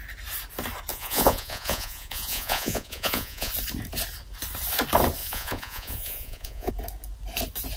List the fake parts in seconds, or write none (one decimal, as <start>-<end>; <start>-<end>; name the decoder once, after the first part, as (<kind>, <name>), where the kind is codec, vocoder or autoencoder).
0.9-3.5 (vocoder, Vocos); 5.2-6.7